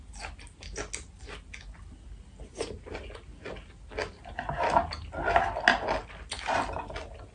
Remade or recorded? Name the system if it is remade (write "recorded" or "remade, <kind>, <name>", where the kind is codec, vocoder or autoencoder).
recorded